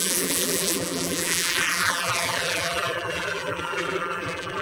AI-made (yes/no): yes